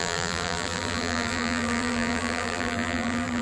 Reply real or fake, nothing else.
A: fake